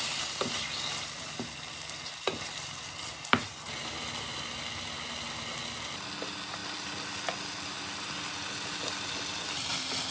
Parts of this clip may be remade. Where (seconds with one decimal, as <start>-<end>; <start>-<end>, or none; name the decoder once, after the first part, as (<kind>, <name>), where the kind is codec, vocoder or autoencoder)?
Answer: none